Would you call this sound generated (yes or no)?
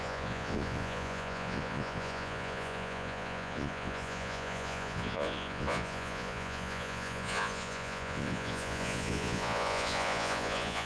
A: yes